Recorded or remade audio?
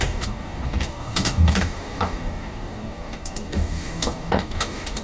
remade